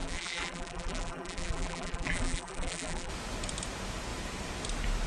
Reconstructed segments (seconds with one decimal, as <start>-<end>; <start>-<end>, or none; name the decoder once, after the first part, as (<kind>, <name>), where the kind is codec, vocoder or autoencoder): 0.0-3.1 (vocoder, BigVGAN v2)